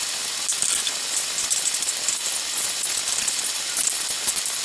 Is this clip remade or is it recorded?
recorded